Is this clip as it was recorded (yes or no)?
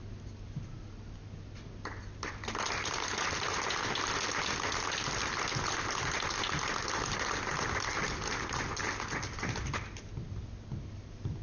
yes